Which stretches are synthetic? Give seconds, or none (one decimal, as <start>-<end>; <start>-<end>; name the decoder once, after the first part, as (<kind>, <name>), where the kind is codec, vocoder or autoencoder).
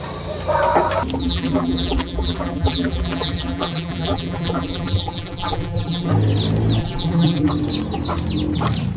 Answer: 1.2-6.1 (vocoder, BigVGAN v2); 6.8-7.5